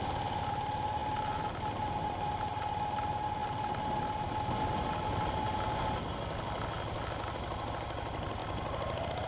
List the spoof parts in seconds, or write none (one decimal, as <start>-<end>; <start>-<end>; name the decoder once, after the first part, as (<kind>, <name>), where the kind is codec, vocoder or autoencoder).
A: none